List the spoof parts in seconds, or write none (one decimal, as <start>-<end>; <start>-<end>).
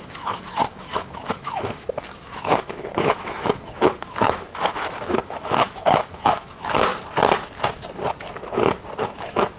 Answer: 0.0-6.9; 9.0-9.6